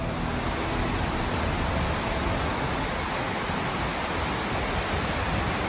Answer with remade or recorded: recorded